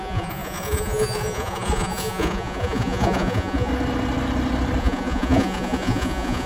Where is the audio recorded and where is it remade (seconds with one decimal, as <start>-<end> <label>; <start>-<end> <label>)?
0.0-3.7 remade; 3.7-4.8 recorded; 4.8-6.5 remade